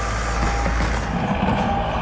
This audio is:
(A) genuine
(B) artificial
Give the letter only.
A